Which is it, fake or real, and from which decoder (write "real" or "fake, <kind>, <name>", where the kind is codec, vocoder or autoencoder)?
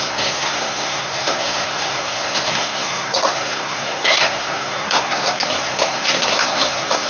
fake, codec, SNAC